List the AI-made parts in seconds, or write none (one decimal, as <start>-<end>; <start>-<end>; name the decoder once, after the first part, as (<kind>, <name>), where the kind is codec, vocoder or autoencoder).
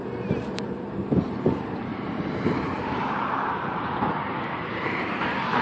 0.0-5.6 (vocoder, BigVGAN v2)